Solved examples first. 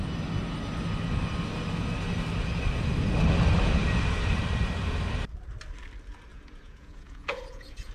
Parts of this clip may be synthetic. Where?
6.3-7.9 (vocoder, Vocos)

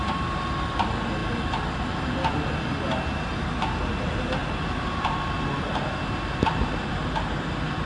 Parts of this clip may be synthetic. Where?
none